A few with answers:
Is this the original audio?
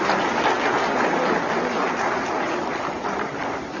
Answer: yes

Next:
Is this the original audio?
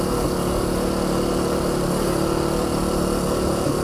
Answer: yes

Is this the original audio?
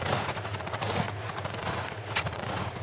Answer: no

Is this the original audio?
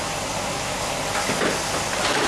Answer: yes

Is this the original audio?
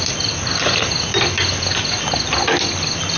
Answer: yes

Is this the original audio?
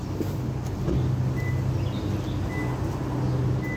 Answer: yes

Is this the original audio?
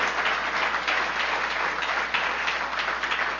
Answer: yes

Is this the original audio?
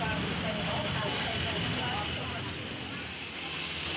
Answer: no